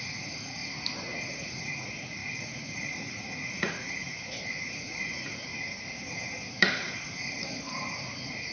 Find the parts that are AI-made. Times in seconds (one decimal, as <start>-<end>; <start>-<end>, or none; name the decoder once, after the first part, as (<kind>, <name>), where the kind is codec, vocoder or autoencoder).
0.0-0.6 (vocoder, Vocos); 1.4-5.5; 8.0-8.5